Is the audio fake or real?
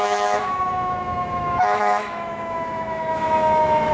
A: fake